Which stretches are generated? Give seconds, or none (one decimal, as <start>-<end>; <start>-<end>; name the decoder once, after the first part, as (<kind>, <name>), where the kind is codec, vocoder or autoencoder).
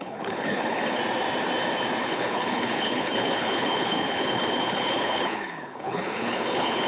0.0-1.0 (codec, HILCodec); 2.0-6.9